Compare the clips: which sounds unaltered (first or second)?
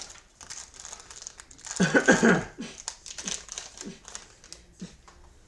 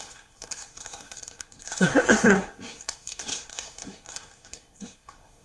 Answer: first